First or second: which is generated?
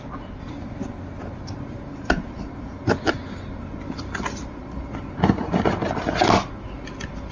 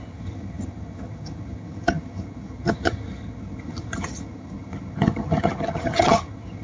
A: second